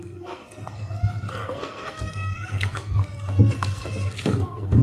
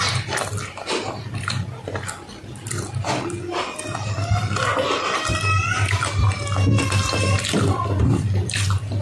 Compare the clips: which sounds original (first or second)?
second